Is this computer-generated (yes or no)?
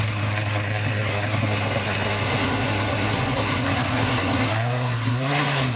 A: yes